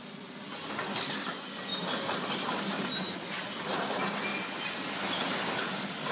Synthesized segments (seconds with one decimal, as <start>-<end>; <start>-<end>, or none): none